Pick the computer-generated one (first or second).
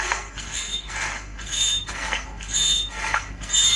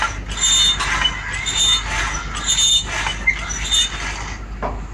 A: first